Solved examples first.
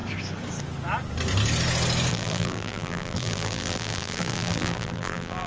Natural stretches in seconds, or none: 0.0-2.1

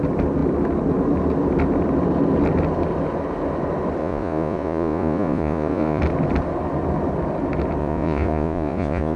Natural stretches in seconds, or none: 0.0-4.0; 6.0-7.8

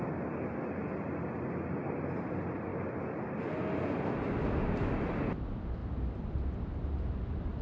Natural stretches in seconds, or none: 0.0-7.6

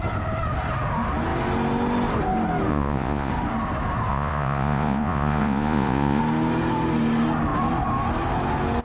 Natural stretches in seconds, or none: 0.0-2.7; 3.3-4.1; 6.2-8.8